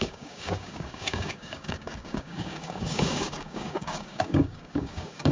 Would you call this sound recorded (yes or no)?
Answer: no